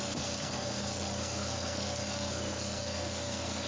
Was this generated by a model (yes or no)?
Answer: yes